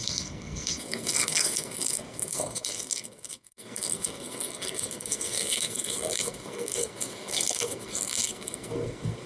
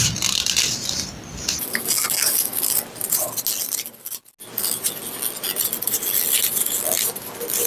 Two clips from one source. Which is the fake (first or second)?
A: first